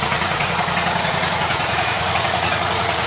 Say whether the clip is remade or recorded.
remade